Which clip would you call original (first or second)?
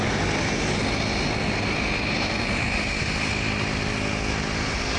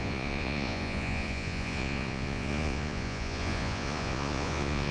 first